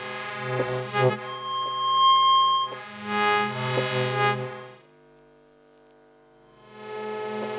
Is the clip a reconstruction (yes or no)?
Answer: no